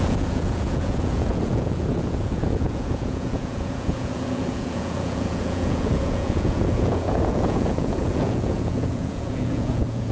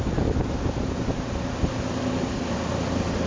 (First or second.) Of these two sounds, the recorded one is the second